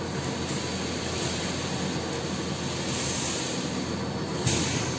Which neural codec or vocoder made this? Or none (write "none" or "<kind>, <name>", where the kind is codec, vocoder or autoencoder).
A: none